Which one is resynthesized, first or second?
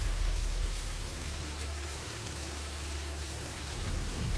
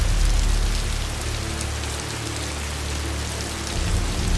first